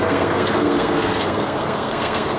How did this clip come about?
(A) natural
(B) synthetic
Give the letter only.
B